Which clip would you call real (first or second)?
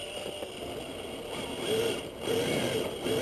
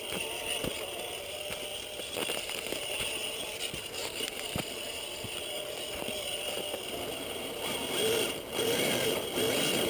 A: first